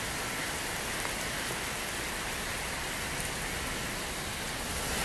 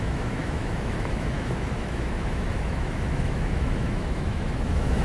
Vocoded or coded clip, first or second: second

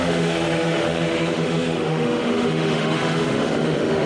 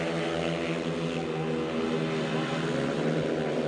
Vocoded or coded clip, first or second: first